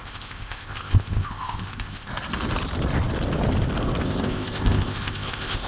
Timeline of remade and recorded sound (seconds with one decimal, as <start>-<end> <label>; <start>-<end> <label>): 0.0-2.1 remade; 2.1-4.0 recorded; 4.0-5.7 remade